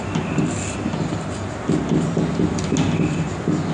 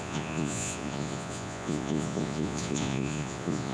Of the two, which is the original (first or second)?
first